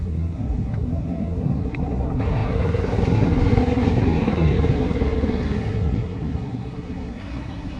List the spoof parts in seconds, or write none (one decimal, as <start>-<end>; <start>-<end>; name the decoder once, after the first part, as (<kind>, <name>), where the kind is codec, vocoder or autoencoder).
0.0-7.8 (codec, SNAC)